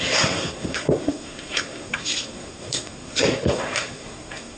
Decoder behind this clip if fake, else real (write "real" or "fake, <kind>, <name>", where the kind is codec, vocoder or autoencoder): fake, codec, SNAC